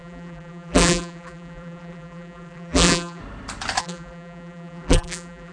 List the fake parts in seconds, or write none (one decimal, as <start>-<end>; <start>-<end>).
0.0-3.2; 3.8-5.5